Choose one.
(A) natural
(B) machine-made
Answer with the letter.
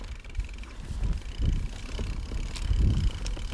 A